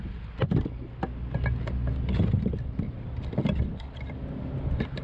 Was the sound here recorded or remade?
recorded